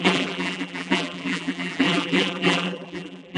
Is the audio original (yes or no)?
no